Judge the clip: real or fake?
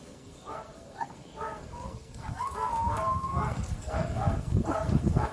fake